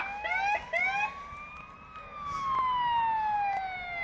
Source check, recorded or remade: recorded